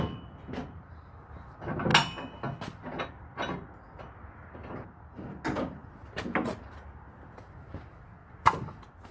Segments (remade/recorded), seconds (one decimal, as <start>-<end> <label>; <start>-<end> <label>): 0.0-5.8 recorded; 5.8-7.4 remade; 7.4-8.2 recorded; 8.2-9.1 remade